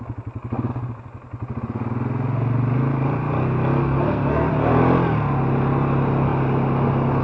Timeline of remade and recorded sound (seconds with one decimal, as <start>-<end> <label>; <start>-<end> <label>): 0.0-3.8 recorded; 3.8-4.5 remade; 4.5-7.2 recorded